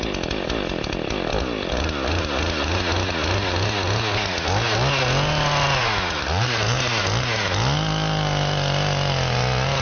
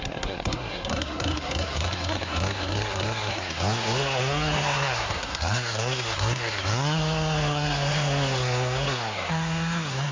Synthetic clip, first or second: second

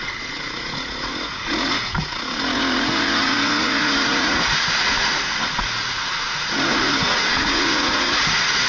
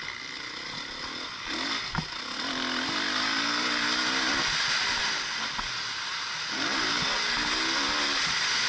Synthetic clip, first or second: first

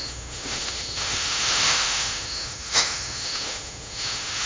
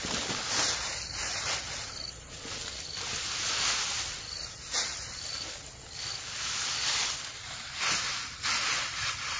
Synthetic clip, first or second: first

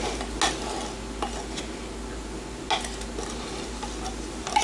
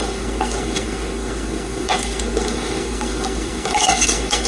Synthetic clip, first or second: second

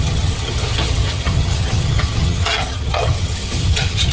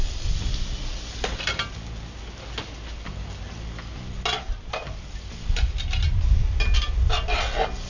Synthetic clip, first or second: first